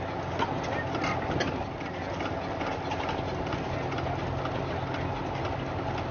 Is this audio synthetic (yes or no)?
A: no